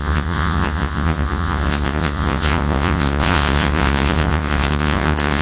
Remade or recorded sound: remade